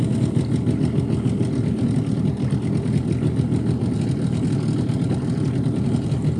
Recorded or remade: recorded